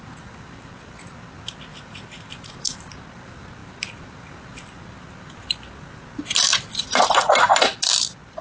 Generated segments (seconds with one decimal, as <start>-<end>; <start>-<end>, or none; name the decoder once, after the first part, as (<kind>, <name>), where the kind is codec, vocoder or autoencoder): 1.7-2.8 (vocoder, BigVGAN v2)